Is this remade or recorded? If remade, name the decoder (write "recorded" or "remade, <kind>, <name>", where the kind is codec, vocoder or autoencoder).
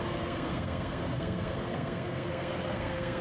remade, codec, SNAC